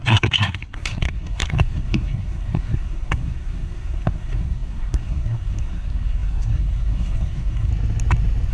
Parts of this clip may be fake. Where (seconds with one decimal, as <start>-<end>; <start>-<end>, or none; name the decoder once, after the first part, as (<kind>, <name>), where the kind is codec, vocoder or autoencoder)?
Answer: 0.0-7.7 (codec, SNAC)